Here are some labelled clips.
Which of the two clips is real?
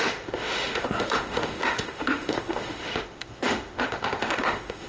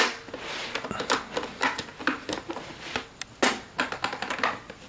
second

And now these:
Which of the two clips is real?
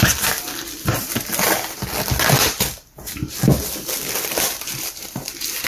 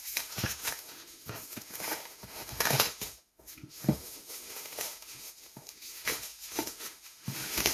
first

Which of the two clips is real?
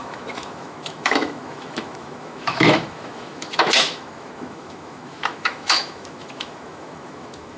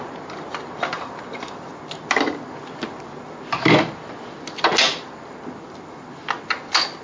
second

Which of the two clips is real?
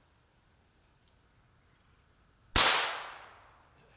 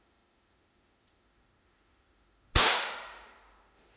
first